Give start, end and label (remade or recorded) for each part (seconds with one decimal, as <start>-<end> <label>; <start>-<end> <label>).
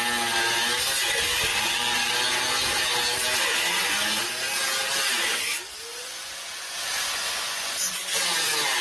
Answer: 0.0-1.5 recorded; 1.5-2.1 remade; 2.1-5.9 recorded; 5.9-8.1 remade; 8.1-8.8 recorded